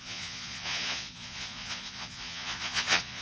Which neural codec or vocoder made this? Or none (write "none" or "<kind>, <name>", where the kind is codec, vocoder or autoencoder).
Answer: vocoder, Vocos